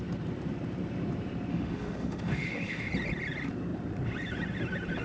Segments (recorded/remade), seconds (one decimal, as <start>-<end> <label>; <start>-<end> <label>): 0.0-1.5 recorded; 1.5-2.9 remade; 2.9-5.0 recorded